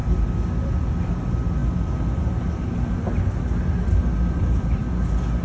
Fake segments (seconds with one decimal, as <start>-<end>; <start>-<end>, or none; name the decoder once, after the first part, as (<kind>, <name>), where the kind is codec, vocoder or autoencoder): none